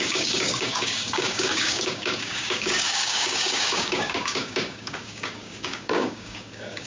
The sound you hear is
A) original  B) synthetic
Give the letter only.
B